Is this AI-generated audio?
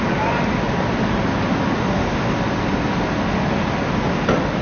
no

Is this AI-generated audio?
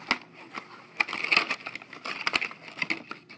no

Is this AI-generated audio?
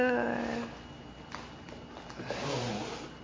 no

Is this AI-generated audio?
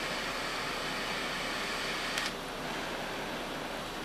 no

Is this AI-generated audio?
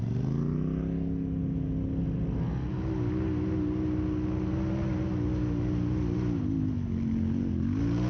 no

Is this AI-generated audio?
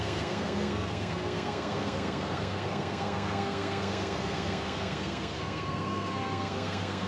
yes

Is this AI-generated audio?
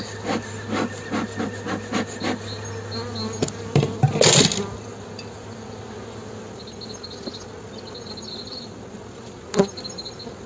no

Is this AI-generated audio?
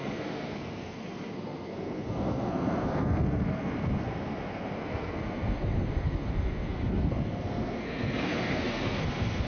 yes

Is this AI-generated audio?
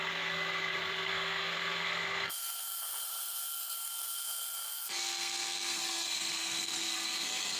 yes